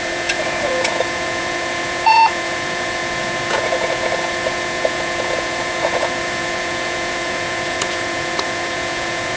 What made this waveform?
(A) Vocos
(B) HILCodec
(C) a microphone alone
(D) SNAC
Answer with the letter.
A